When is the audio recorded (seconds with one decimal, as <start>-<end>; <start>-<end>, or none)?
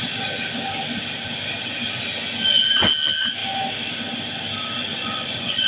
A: 0.0-4.9